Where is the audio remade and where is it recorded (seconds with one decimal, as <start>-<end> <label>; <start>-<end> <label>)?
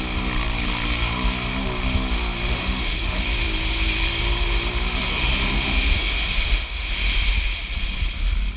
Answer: 0.0-2.5 recorded; 2.5-3.2 remade; 3.2-5.1 recorded; 5.1-6.9 remade; 6.9-8.6 recorded